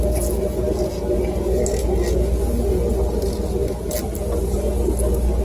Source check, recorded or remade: recorded